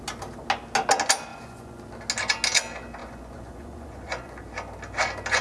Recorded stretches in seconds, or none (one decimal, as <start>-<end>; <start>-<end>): 0.0-1.3; 1.8-3.0; 4.4-5.4